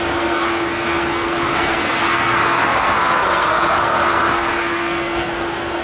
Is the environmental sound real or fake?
fake